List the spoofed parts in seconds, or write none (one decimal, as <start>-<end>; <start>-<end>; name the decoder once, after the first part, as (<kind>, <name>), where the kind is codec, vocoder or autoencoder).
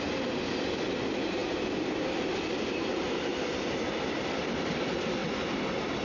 none